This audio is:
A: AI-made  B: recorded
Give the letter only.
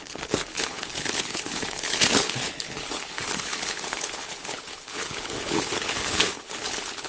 A